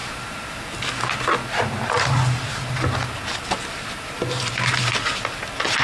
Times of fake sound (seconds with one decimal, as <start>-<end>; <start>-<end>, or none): none